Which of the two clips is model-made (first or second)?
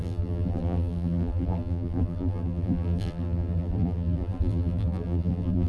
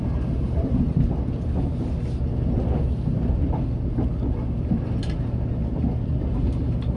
first